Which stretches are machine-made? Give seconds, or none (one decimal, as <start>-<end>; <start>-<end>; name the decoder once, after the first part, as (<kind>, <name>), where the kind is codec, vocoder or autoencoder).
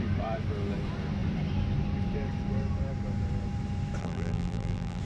4.0-5.0 (vocoder, BigVGAN v2)